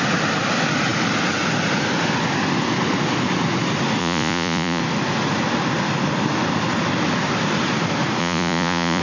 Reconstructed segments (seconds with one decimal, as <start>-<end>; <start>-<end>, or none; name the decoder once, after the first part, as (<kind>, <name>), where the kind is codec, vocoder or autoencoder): 4.0-4.8 (vocoder, Vocos); 8.2-9.0